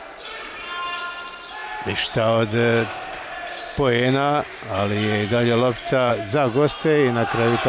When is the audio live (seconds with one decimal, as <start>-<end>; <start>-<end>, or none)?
0.0-7.7